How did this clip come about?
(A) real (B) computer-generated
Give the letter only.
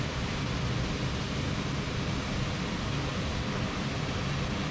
A